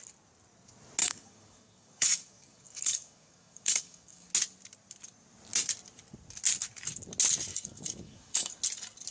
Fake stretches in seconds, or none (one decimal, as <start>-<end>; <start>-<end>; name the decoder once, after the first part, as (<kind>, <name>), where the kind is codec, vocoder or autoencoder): 1.0-4.3 (codec, DAC); 7.5-8.5